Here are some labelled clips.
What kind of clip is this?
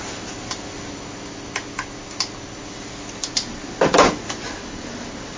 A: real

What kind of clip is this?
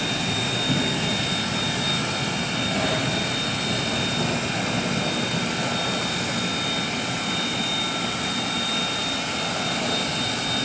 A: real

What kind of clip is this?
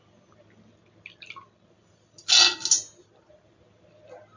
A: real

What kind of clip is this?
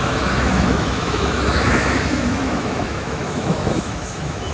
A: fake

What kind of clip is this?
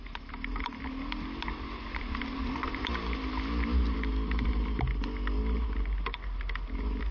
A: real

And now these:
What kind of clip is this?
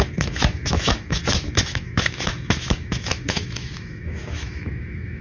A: fake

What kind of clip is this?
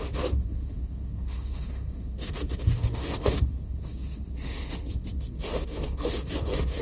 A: fake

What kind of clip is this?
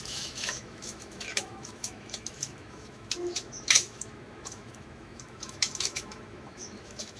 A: fake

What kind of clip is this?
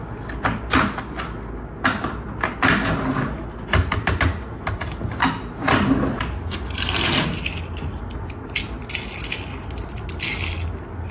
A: real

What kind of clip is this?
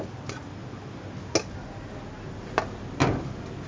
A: real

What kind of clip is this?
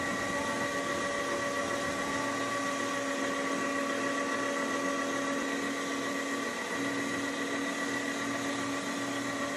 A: real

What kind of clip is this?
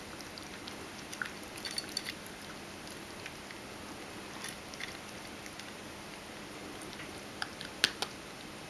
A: real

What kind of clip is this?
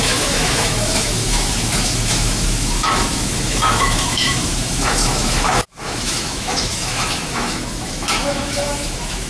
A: fake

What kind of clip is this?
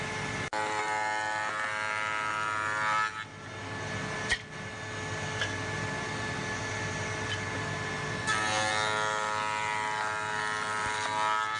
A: real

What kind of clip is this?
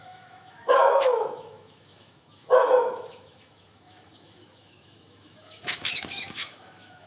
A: fake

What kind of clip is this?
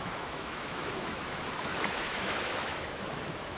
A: fake